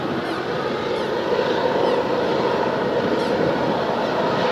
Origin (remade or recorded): recorded